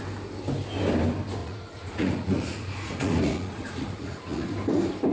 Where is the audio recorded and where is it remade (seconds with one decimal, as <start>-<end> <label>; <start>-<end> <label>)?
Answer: 0.0-1.4 recorded; 1.4-4.5 remade; 4.5-5.1 recorded

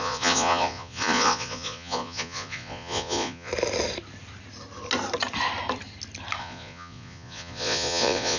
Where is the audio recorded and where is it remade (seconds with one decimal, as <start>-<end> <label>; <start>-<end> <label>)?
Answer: 0.0-3.5 remade; 3.5-6.4 recorded; 6.4-8.4 remade